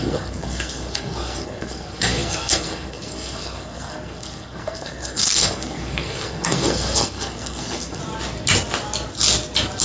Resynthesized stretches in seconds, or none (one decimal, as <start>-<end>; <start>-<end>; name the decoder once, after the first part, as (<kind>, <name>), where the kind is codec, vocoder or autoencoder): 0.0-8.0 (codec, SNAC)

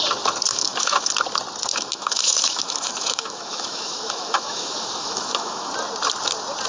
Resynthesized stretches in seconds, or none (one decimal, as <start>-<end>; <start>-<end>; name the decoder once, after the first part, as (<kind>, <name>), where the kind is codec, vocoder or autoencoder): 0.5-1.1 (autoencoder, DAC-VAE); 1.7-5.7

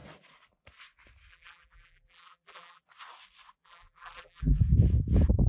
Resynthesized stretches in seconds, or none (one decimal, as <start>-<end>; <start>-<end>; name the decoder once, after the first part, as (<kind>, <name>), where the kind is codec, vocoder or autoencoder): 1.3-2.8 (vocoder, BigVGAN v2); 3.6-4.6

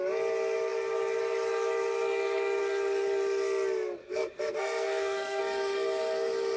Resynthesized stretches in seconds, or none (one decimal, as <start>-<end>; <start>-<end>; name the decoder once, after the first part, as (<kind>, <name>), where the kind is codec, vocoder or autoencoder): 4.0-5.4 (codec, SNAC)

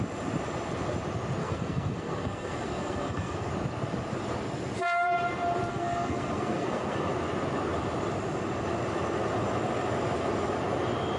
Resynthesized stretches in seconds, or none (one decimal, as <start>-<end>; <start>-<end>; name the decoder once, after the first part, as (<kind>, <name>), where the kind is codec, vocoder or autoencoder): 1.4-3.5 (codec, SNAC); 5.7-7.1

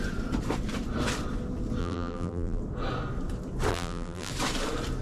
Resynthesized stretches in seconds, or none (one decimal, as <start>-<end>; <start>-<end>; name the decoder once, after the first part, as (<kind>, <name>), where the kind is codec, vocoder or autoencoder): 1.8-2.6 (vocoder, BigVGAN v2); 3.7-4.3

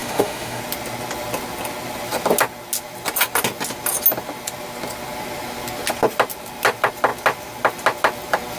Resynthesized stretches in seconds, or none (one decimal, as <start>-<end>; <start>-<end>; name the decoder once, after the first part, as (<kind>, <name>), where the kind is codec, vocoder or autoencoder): 0.0-0.6 (autoencoder, DAC-VAE)